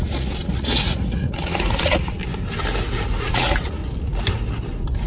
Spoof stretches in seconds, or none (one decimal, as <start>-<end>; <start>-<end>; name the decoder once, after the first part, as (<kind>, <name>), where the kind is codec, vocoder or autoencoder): 0.0-2.2 (vocoder, Vocos); 3.2-3.8